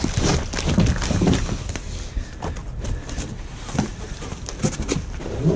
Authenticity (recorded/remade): recorded